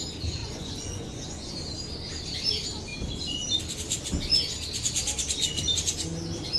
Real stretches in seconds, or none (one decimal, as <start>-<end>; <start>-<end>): 0.0-0.4; 1.5-6.6